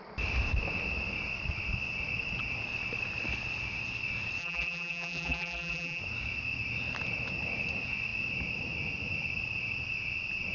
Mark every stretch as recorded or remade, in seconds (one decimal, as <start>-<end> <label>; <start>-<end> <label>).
0.0-4.4 recorded; 4.4-6.0 remade; 6.0-10.5 recorded